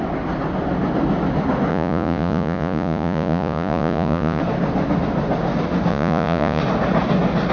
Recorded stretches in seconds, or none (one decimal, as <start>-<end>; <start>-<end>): 0.0-1.7; 4.4-5.9; 6.6-7.5